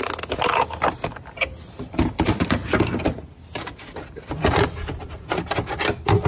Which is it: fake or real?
real